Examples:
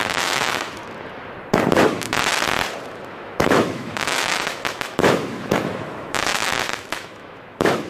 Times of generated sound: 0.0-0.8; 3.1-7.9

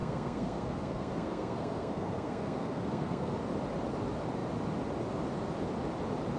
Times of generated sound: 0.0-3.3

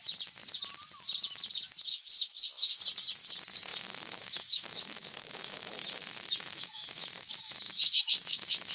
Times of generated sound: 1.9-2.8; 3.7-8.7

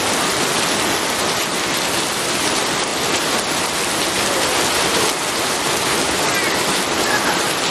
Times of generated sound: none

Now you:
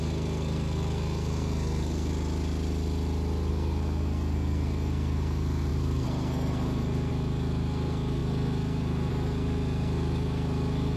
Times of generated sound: 0.0-2.1; 3.5-11.0

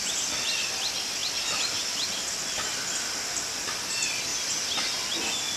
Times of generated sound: none

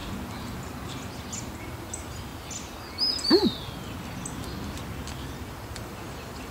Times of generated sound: 0.0-2.3; 5.5-6.5

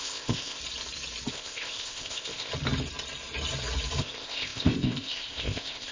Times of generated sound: 0.0-0.6; 1.3-2.5; 4.0-5.9